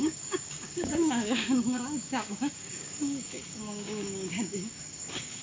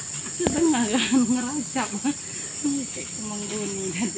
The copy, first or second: first